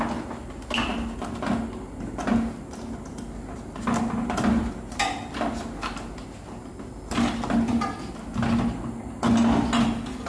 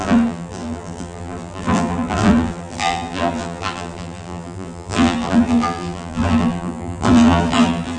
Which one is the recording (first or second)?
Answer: first